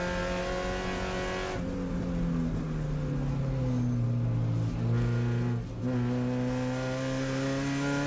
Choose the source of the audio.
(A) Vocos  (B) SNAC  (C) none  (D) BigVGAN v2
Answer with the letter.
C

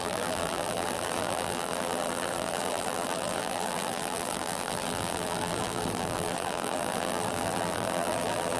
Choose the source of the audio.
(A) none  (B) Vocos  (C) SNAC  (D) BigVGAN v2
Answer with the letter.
D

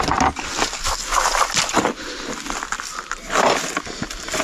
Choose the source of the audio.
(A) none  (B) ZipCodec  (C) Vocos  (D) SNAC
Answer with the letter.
A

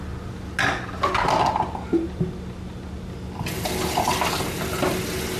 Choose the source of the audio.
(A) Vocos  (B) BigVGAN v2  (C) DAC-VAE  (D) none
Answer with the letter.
D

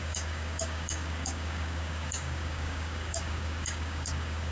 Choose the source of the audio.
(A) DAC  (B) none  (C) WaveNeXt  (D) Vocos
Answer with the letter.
A